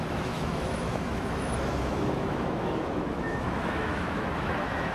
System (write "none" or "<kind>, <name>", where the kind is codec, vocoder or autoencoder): autoencoder, DAC-VAE